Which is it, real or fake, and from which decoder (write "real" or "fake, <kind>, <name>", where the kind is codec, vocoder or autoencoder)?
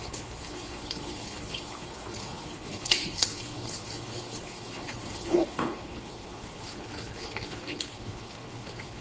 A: fake, codec, HILCodec